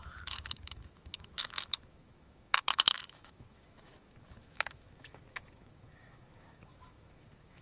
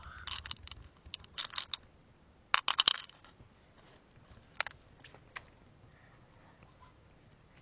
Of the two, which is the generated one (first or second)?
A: first